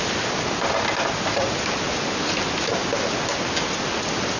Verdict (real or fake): real